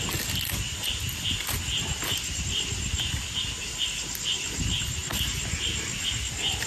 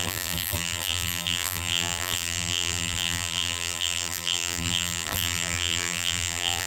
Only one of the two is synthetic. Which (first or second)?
second